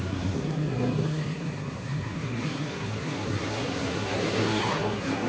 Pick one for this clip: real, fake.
fake